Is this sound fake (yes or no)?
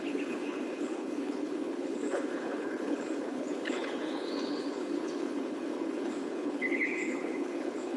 yes